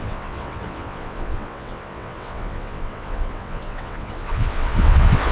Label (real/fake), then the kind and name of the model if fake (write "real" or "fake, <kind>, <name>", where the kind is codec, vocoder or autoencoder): fake, vocoder, WaveNeXt